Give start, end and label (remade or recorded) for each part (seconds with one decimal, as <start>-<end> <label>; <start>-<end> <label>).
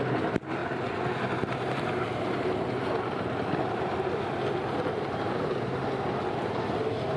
0.0-7.2 recorded